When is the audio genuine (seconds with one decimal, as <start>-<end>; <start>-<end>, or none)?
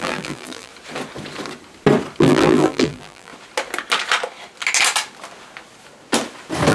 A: 0.7-2.2; 3.3-6.7